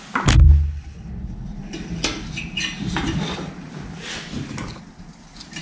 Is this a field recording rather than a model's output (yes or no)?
yes